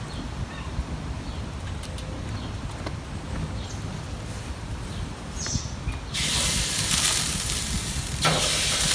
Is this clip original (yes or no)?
yes